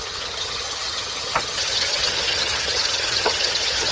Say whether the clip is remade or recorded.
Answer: remade